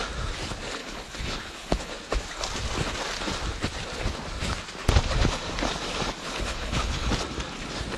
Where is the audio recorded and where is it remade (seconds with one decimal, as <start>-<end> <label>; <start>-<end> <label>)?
0.0-0.8 recorded; 0.8-1.9 remade; 1.9-6.2 recorded; 6.2-7.1 remade; 7.1-8.0 recorded